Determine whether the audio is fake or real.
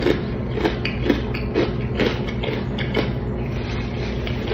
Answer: real